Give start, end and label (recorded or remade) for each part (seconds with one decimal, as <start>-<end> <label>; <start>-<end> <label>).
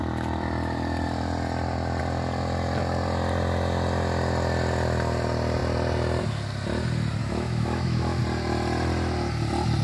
0.0-7.2 recorded; 7.2-8.2 remade; 8.2-9.8 recorded